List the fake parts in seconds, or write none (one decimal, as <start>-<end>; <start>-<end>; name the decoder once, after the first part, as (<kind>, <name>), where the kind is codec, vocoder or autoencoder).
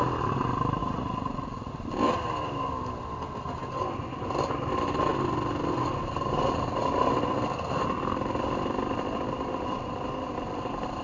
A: 0.8-1.7 (vocoder, Vocos)